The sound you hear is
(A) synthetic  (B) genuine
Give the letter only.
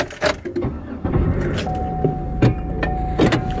B